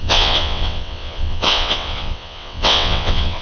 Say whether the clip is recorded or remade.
remade